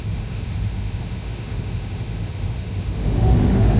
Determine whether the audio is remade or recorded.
remade